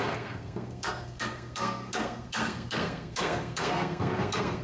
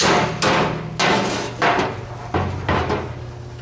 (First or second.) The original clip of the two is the second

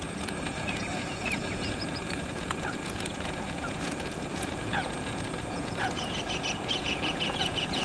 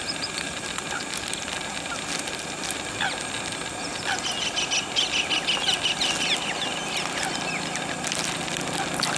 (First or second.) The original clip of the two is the second